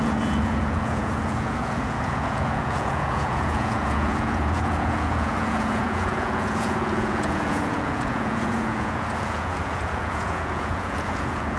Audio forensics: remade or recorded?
remade